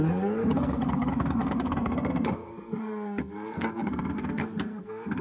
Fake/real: fake